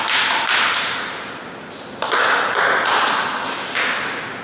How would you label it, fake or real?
real